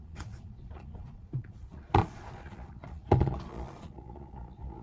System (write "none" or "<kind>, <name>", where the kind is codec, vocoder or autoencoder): vocoder, Vocos